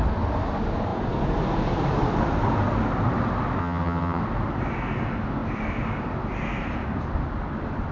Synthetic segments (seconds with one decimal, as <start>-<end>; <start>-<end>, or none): 3.6-4.2